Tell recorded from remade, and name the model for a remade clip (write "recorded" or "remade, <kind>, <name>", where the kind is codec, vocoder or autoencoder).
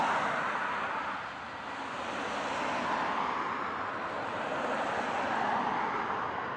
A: recorded